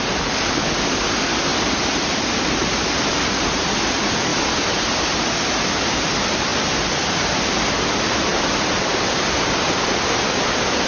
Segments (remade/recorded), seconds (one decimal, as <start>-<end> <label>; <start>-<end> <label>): 0.0-1.5 remade; 1.5-2.3 recorded; 2.3-4.3 remade; 4.3-5.7 recorded; 5.7-10.9 remade